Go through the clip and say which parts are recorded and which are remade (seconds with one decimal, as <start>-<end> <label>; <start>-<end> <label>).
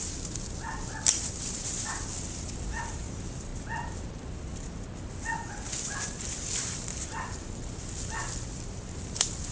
0.0-3.5 remade; 3.5-4.1 recorded; 4.1-9.5 remade